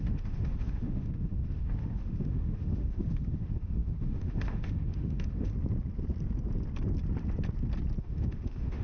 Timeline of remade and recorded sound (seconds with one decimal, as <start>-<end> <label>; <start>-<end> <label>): 0.0-5.5 remade; 5.5-8.0 recorded; 8.0-8.8 remade